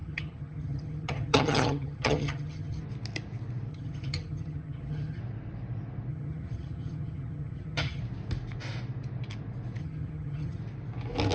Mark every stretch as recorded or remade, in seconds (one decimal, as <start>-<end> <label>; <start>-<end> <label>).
0.0-2.8 remade; 2.8-3.7 recorded; 3.7-5.2 remade; 5.2-6.1 recorded; 6.1-8.0 remade; 8.0-9.8 recorded; 9.8-10.6 remade; 10.6-11.3 recorded